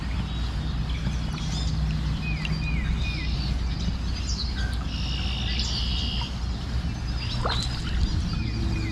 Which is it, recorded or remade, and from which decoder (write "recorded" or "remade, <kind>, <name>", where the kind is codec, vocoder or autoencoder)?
recorded